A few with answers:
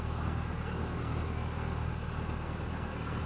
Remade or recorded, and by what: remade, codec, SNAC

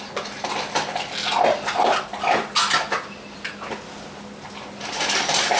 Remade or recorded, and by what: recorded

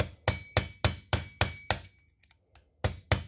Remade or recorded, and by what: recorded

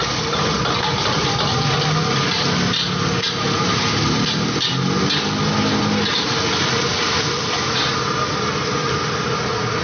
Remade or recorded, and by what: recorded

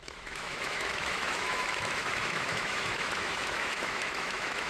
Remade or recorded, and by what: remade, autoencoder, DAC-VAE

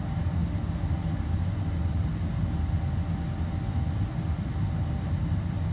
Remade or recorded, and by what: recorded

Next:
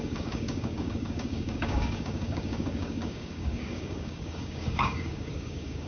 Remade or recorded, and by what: remade, codec, DAC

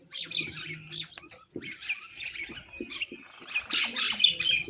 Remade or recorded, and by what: recorded